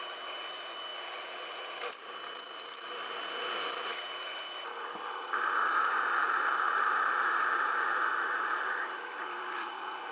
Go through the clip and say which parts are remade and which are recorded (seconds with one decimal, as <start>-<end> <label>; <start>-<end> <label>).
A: 0.0-10.1 recorded